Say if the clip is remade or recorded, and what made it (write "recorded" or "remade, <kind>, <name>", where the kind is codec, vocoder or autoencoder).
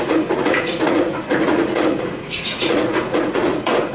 remade, vocoder, Vocos